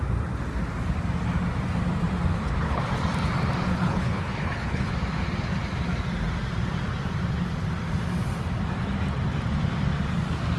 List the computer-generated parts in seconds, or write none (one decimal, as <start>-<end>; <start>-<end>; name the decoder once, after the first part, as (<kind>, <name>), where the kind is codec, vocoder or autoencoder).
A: 2.3-2.8 (codec, HILCodec); 3.7-4.9